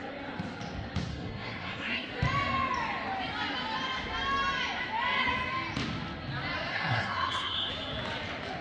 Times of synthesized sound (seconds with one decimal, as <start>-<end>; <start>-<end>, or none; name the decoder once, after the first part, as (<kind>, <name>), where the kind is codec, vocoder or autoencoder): 1.1-2.1 (codec, SNAC); 6.7-7.7